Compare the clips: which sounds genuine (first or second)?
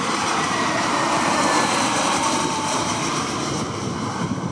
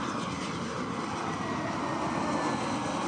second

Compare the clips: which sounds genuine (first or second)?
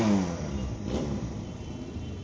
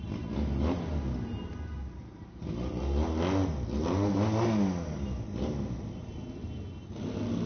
second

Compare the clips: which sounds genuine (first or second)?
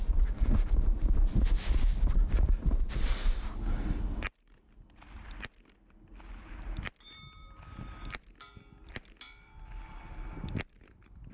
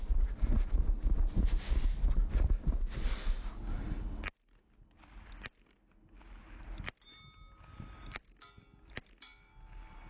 second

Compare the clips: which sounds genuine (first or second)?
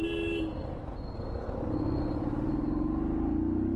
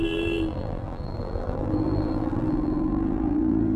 first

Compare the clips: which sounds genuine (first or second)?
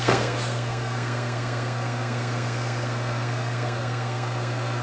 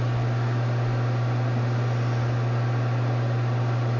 second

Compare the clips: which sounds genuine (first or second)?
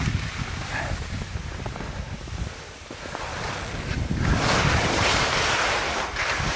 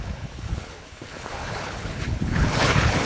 first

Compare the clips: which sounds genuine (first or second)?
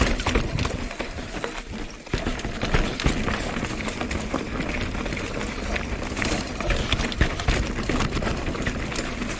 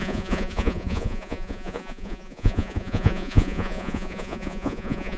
first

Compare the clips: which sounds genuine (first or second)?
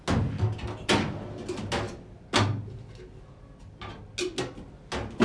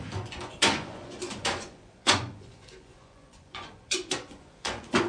first